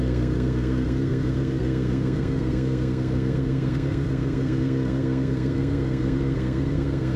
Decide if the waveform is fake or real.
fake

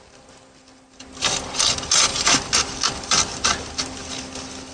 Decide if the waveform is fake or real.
real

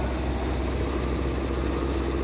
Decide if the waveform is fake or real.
real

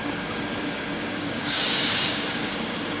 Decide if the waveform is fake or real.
fake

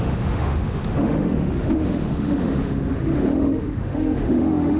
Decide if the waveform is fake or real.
fake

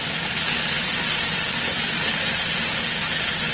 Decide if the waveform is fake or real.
real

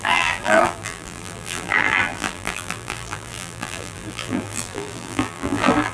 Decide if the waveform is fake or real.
fake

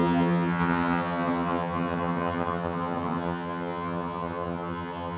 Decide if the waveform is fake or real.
fake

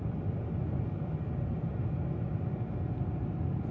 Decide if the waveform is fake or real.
real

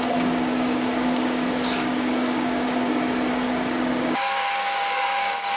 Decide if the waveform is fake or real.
fake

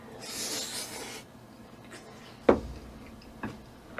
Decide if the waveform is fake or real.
real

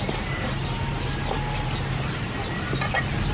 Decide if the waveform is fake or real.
real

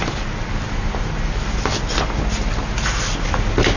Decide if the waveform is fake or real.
real